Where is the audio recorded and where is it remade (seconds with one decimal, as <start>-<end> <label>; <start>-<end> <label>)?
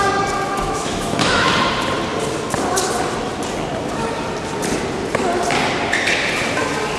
0.0-0.6 recorded; 0.6-1.5 remade; 1.5-7.0 recorded